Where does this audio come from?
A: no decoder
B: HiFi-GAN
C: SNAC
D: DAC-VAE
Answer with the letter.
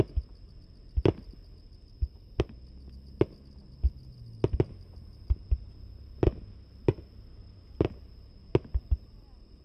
A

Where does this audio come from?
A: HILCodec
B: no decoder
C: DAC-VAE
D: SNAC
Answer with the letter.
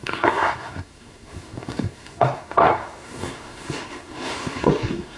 D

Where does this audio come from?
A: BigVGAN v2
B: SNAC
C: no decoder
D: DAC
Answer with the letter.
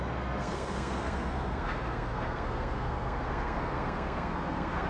B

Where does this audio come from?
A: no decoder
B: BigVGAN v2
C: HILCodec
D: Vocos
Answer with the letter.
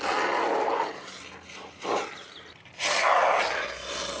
A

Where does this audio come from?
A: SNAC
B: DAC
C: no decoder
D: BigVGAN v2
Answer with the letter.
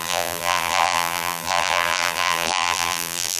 D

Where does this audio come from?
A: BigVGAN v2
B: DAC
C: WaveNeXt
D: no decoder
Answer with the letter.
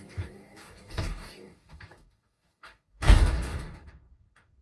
B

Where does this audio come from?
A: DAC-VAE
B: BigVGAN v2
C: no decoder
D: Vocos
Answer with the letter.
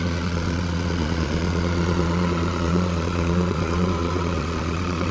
D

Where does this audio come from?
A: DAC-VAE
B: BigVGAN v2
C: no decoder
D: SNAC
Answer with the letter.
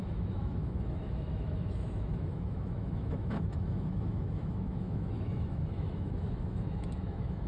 A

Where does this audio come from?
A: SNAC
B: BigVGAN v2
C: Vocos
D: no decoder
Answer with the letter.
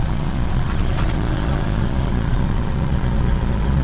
C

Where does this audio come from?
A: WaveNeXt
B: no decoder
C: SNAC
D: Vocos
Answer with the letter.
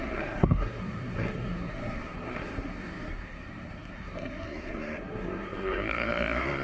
C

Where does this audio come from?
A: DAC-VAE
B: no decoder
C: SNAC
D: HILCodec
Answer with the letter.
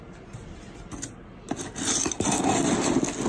B